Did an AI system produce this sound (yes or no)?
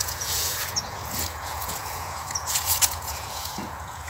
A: yes